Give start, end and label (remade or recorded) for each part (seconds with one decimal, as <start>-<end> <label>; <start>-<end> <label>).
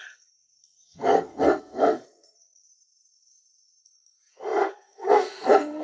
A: 0.0-5.8 remade